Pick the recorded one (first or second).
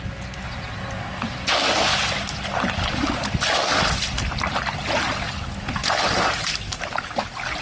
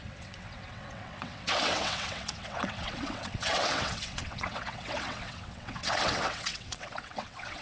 first